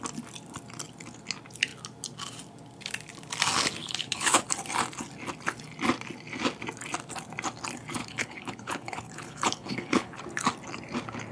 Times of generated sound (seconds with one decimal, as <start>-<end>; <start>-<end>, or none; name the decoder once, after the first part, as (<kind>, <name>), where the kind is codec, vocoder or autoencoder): 3.8-4.4 (codec, HILCodec); 8.0-10.2